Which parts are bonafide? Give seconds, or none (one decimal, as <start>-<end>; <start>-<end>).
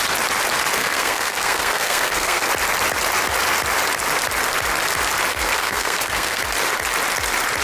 0.0-0.8; 2.5-5.3; 6.4-7.6